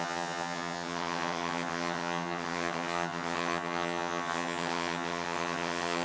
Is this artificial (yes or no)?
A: yes